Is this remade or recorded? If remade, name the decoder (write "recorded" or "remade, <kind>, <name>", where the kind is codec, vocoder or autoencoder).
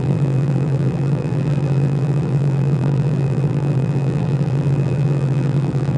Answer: remade, vocoder, BigVGAN v2